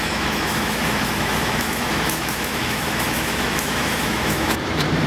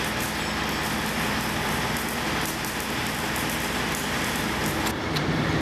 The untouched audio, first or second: second